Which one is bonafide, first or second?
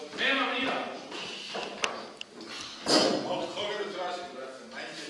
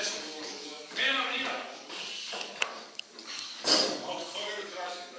first